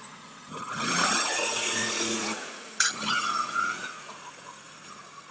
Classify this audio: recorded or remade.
remade